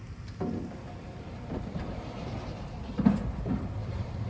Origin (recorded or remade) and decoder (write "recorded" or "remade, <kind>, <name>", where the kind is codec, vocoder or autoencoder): remade, vocoder, BigVGAN v2